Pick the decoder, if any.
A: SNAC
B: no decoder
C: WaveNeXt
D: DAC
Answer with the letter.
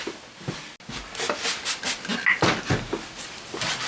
B